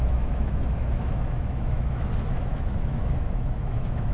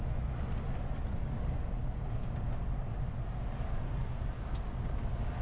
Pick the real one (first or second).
second